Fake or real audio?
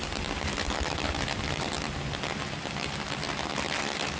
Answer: real